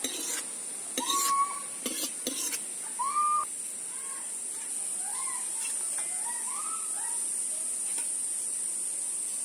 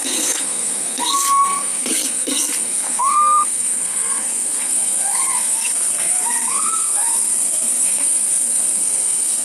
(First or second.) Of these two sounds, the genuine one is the first